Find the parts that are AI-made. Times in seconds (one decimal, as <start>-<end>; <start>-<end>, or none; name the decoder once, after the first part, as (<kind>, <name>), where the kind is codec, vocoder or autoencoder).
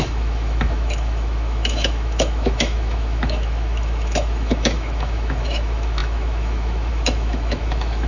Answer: 0.0-8.1 (autoencoder, DAC-VAE)